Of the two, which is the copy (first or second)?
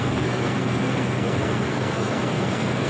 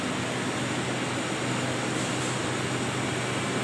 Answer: first